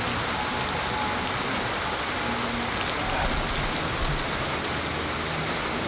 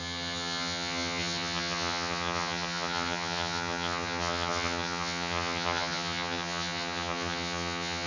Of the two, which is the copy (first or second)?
second